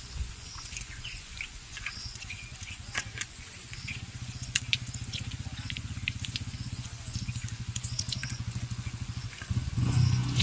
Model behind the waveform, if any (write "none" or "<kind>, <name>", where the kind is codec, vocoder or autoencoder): vocoder, Vocos